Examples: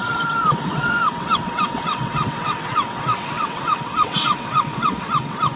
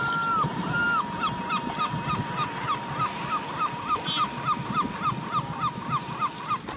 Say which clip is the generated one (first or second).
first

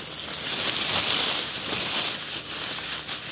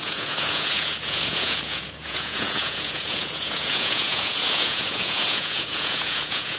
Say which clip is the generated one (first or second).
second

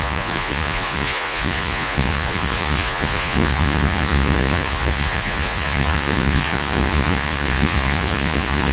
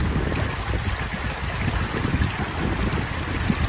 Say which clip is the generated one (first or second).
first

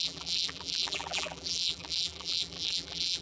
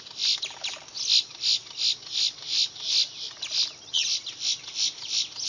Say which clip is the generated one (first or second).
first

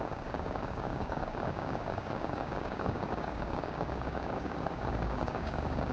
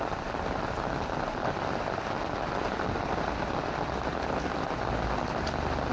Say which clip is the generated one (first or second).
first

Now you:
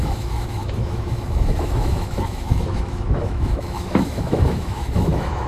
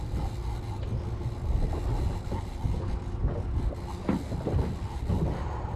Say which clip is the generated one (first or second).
first